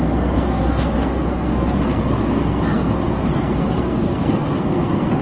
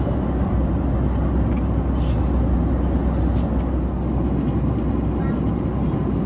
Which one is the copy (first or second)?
first